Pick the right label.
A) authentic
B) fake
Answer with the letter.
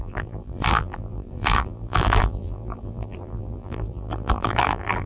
B